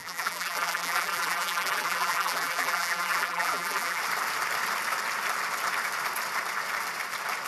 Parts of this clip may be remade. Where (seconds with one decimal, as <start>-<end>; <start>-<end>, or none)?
0.0-4.0